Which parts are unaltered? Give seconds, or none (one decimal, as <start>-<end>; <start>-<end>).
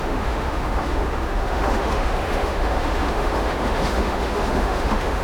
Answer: none